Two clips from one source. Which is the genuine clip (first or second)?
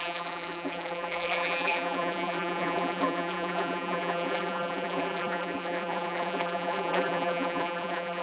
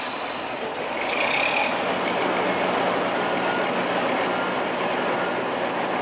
second